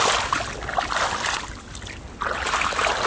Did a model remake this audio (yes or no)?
no